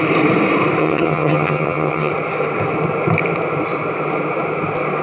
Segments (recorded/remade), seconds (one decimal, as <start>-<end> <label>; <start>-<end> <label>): 0.0-0.8 recorded; 0.8-2.1 remade; 2.1-5.0 recorded